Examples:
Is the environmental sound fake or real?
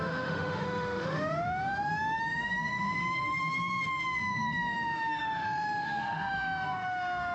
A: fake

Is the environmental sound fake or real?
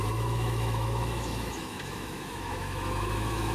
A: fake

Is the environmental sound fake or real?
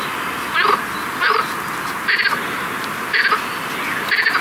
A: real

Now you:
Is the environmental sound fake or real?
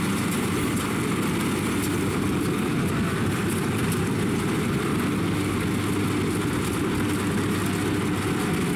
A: real